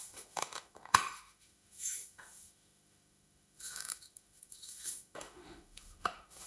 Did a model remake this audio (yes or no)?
yes